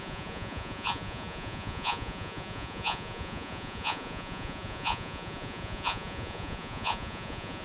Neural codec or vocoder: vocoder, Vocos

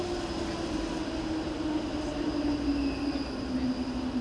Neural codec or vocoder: none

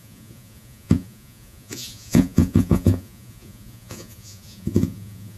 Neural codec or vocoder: vocoder, Vocos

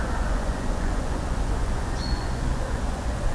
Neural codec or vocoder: vocoder, Vocos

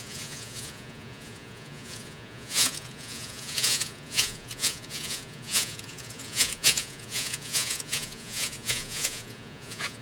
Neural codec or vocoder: vocoder, Vocos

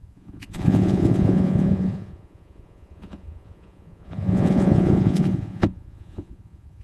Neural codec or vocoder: vocoder, Vocos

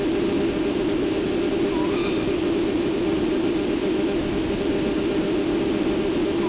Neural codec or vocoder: none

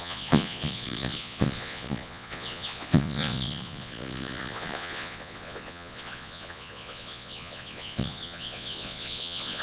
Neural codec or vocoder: vocoder, Vocos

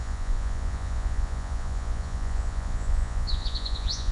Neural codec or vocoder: vocoder, Vocos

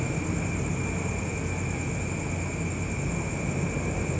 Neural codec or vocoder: none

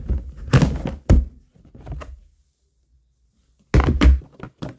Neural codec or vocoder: none